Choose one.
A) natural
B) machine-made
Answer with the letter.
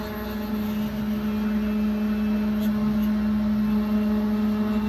A